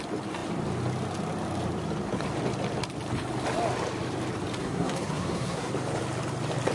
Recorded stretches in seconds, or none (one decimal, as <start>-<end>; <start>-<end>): 0.0-4.6; 5.7-6.7